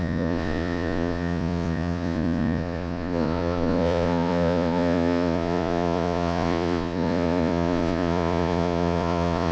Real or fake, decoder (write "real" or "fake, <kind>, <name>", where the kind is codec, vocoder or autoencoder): fake, vocoder, Vocos